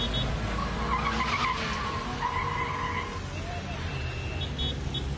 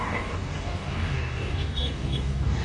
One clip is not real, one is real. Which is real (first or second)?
first